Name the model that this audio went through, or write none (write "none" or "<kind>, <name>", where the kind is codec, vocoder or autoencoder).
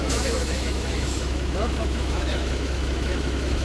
autoencoder, DAC-VAE